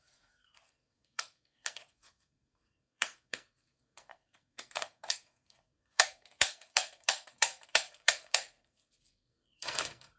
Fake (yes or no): yes